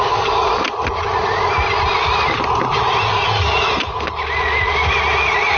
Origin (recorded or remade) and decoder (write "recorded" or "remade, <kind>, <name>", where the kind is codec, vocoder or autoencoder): recorded